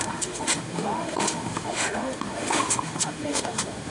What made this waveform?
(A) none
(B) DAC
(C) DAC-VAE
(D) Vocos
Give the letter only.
C